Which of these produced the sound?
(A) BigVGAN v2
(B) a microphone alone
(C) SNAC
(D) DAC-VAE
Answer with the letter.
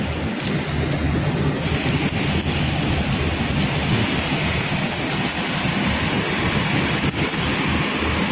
B